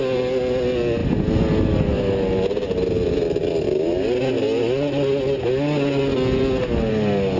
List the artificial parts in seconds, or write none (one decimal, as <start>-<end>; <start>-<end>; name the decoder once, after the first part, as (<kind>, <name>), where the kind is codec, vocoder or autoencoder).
none